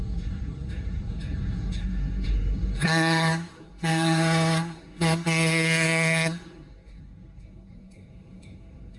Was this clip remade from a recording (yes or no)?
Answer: yes